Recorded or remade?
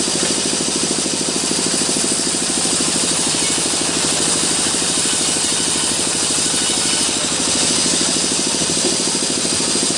recorded